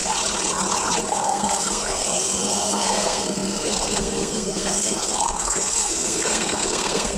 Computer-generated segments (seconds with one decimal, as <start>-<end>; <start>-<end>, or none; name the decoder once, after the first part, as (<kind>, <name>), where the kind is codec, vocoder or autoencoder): 1.1-7.2 (codec, SNAC)